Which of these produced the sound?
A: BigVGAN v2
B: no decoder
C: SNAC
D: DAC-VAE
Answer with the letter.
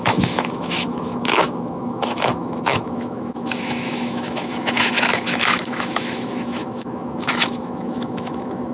D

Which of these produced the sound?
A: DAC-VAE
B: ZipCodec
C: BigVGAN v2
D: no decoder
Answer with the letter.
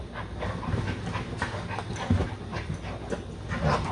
D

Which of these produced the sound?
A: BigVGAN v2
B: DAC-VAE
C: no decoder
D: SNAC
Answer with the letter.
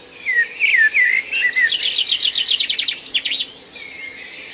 C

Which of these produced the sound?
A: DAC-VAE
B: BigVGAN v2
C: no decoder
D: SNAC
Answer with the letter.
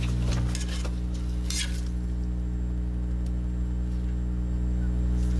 C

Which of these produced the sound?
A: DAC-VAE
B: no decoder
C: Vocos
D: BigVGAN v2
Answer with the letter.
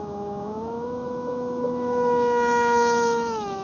A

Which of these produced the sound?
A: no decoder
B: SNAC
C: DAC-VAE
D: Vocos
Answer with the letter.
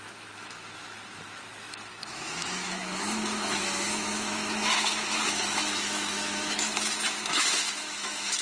C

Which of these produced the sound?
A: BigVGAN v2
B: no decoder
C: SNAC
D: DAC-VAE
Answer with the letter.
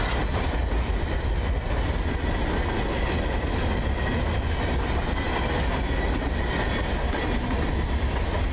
B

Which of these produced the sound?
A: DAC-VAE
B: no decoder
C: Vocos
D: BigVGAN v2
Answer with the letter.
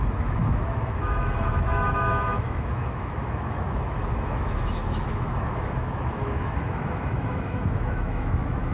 A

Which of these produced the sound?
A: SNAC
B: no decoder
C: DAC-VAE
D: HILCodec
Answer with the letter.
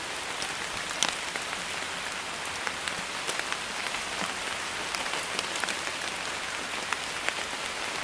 B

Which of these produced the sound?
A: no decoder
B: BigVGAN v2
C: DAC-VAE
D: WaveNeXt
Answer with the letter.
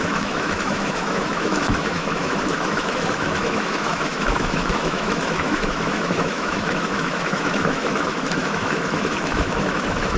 C